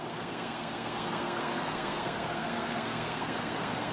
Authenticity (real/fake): fake